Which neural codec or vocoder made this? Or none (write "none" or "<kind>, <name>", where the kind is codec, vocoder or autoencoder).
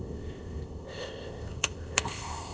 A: codec, ZipCodec